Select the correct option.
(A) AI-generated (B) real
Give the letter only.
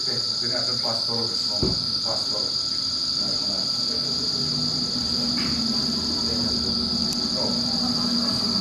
B